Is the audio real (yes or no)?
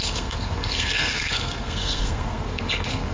no